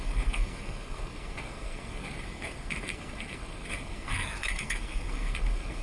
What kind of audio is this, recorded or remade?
remade